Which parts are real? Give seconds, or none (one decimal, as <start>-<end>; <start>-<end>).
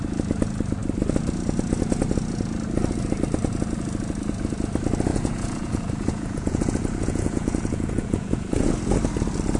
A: 0.0-5.1; 8.7-9.6